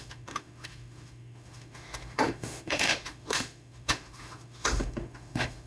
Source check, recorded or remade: remade